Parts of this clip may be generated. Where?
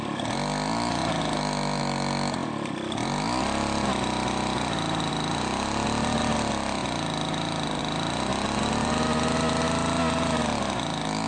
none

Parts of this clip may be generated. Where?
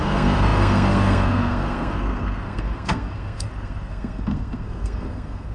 0.0-5.5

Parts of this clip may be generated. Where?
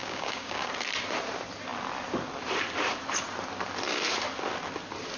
0.0-0.7